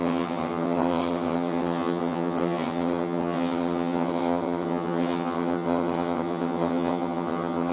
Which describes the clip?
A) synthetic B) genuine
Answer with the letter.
A